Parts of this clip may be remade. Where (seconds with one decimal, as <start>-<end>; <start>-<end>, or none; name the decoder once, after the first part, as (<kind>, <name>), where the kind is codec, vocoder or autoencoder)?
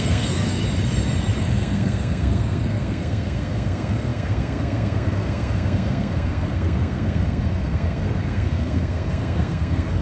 0.0-0.6 (codec, SNAC); 1.4-10.0